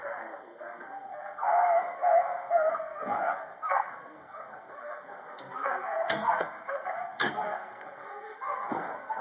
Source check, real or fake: fake